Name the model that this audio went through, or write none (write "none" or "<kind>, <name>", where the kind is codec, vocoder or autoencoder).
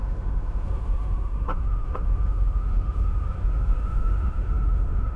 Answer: autoencoder, DAC-VAE